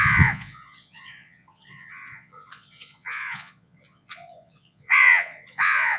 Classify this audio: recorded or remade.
remade